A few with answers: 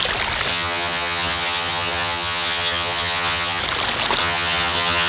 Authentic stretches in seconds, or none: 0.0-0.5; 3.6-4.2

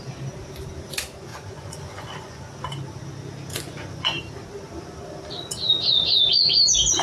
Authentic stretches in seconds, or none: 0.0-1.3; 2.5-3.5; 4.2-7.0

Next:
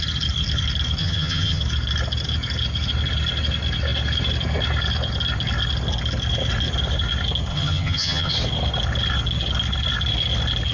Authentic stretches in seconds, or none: 0.0-1.0; 1.6-7.5; 8.3-10.7

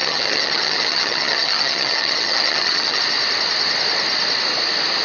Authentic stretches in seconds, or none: 3.0-5.0

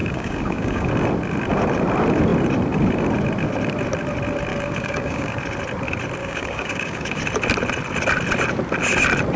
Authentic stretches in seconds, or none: 0.9-4.5; 5.4-6.2; 7.2-9.4